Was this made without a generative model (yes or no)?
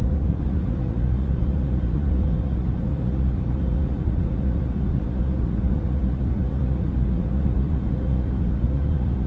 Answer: no